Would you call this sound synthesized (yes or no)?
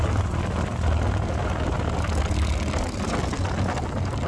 no